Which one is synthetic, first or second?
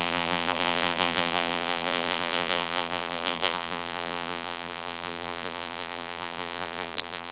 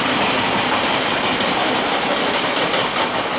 first